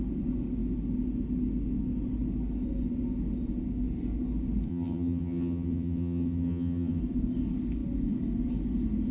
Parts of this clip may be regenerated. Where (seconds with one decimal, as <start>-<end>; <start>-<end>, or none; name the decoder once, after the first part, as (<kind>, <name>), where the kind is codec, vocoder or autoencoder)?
4.7-7.0 (vocoder, HiFi-GAN)